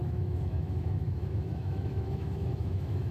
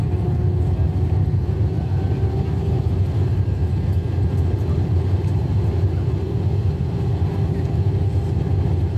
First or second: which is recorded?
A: second